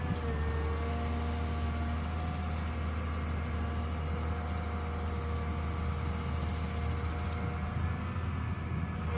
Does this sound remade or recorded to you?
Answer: recorded